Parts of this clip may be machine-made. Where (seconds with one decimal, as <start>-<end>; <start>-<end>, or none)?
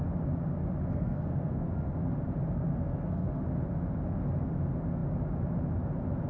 0.9-1.9; 2.7-3.4